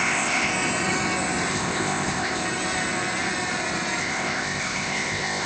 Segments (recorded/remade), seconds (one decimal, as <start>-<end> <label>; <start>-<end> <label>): 0.0-0.5 remade; 0.5-1.5 recorded; 1.5-2.4 remade; 2.4-4.0 recorded; 4.0-5.5 remade